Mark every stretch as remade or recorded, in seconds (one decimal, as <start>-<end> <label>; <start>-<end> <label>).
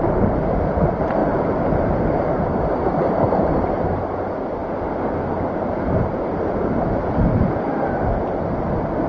0.0-9.1 recorded